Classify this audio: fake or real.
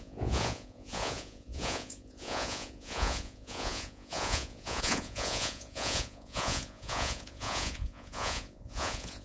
fake